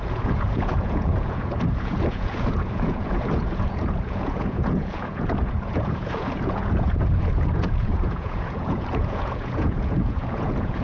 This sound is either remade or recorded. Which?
remade